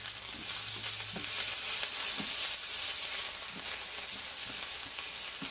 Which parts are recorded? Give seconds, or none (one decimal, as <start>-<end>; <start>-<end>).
0.0-5.5